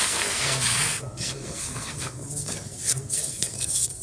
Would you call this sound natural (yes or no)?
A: no